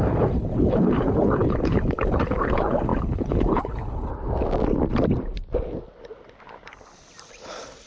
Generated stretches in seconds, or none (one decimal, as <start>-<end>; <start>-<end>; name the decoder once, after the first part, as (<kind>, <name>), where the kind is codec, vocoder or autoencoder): 0.0-4.1 (codec, HILCodec); 7.3-7.9